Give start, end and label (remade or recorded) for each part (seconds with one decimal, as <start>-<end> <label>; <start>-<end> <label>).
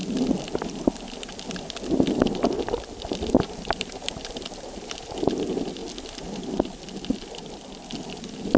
0.0-8.6 recorded